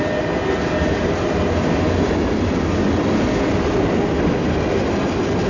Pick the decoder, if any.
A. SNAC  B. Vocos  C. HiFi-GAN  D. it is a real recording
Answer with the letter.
D